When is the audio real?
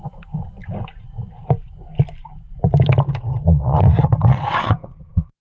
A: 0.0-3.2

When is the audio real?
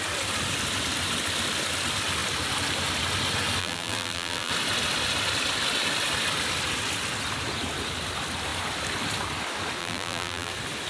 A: 0.0-3.6; 4.5-9.8; 10.5-10.9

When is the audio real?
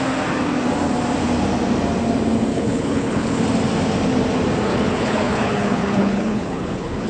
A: 0.0-2.5; 3.4-4.7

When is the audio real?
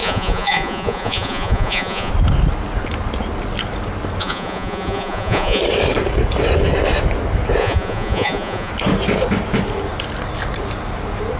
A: 2.1-4.2; 5.6-7.6; 8.7-11.4